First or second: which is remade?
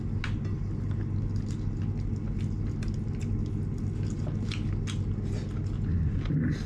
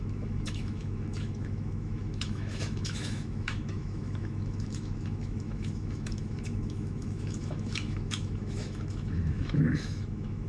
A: second